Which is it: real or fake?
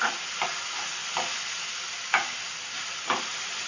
real